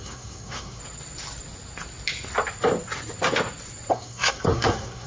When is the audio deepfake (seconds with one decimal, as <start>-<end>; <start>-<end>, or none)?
0.0-0.8; 3.9-5.1